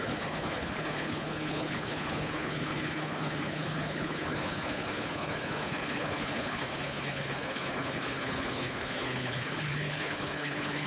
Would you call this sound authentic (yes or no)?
no